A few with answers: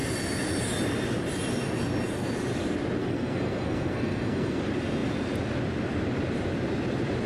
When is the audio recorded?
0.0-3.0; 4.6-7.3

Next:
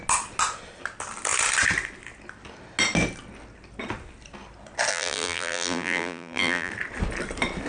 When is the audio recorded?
0.0-4.9; 6.7-7.7

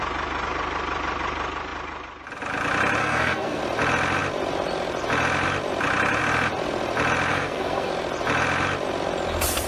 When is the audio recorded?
0.0-3.0; 3.6-7.3; 7.9-9.7

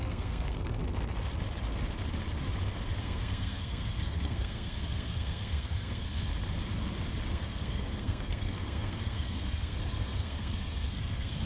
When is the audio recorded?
0.8-3.0; 6.3-7.3

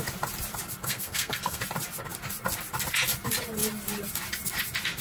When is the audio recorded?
0.0-0.8; 1.6-5.0

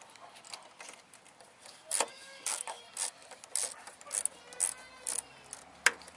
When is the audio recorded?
0.0-2.1; 2.8-6.2